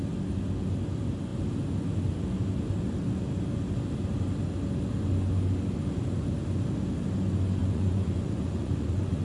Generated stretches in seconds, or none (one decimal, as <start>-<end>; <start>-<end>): 7.6-9.2